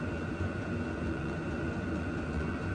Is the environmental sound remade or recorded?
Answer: remade